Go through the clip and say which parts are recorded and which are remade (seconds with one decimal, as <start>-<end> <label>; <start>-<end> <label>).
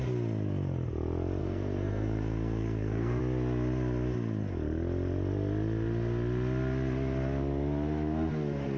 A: 0.0-1.4 recorded; 1.4-3.2 remade; 3.2-8.8 recorded